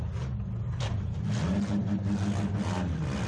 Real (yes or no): yes